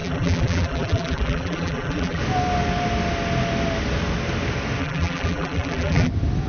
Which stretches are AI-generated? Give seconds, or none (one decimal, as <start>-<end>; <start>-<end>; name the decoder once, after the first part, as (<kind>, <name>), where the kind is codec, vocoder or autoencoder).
0.0-2.2 (vocoder, BigVGAN v2); 4.8-6.1